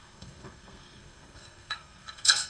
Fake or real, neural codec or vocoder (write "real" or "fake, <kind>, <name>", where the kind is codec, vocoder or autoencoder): fake, codec, SNAC